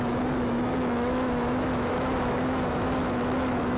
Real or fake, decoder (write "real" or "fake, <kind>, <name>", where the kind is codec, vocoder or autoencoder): fake, autoencoder, DAC-VAE